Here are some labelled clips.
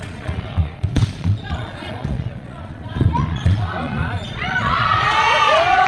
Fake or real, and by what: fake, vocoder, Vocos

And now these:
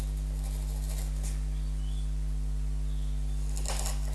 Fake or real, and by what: real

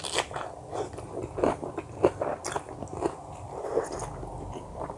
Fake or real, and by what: real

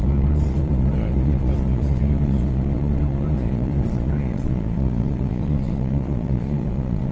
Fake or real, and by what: fake, vocoder, Vocos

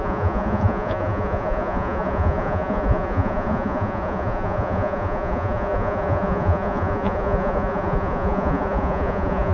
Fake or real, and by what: fake, vocoder, Vocos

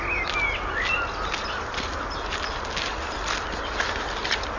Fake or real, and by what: real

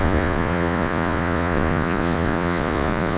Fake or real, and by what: fake, vocoder, Vocos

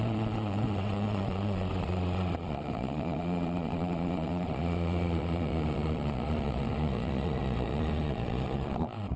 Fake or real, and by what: fake, vocoder, Vocos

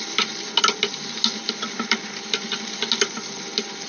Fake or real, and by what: real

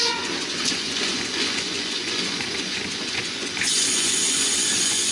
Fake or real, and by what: fake, vocoder, Vocos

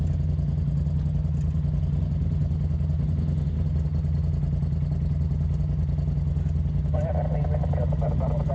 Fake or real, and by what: real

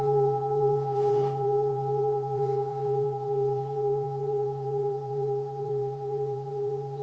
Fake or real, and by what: fake, vocoder, Vocos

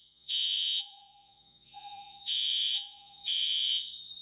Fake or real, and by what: fake, vocoder, Vocos